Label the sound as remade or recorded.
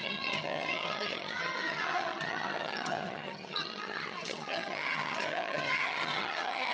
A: remade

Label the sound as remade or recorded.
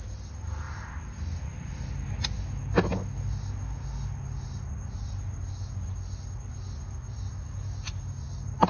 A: recorded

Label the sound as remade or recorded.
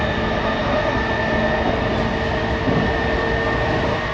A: recorded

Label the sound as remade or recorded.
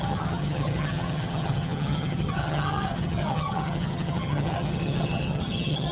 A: remade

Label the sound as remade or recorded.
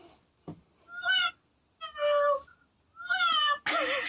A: recorded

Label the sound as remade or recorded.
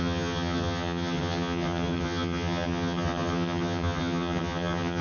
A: remade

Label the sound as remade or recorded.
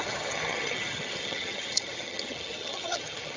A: remade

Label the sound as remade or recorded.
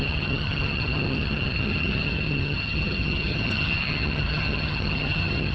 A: remade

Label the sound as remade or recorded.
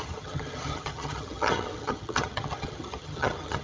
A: remade